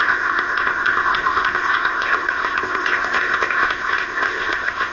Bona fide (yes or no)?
no